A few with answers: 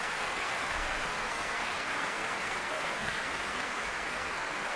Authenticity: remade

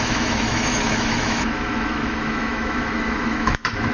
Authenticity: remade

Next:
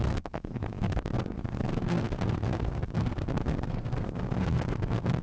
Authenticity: remade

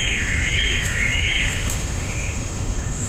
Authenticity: remade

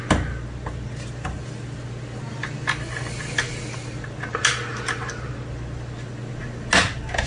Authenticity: recorded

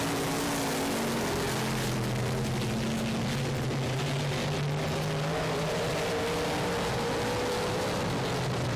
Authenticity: recorded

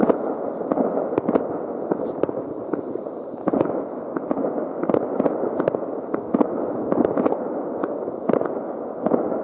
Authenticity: recorded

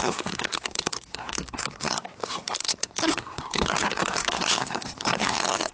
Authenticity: remade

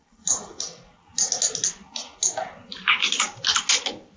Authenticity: recorded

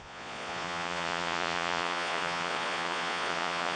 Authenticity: remade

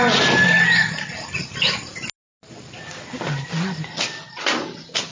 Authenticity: recorded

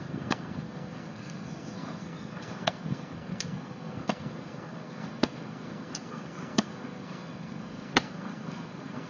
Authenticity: remade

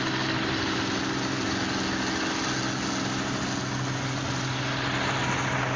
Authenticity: recorded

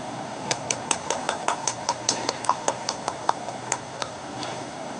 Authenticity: remade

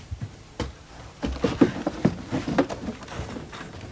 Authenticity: recorded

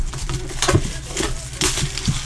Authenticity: remade